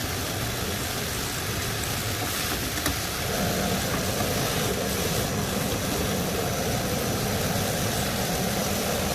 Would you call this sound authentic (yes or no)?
yes